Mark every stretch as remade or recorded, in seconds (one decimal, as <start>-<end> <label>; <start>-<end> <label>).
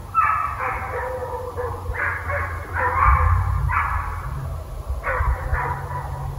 0.0-6.4 recorded